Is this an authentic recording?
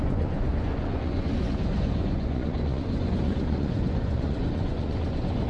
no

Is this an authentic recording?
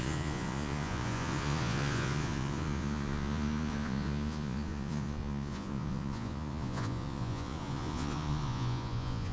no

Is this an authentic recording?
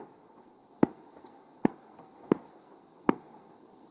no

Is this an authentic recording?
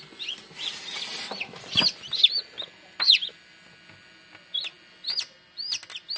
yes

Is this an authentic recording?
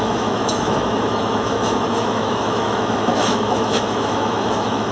no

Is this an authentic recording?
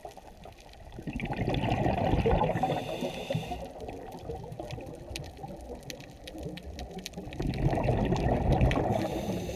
yes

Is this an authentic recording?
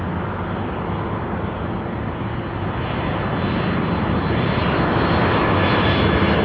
yes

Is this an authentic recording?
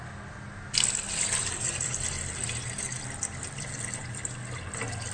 yes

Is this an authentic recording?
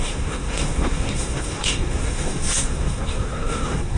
no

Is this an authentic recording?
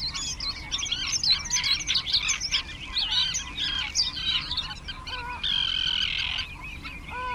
yes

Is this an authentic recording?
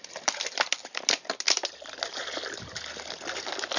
yes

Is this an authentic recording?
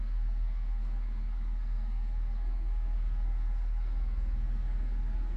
no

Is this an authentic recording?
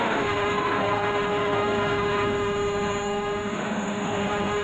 no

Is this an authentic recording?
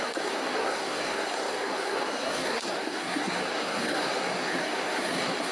no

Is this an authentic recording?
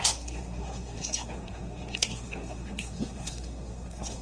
no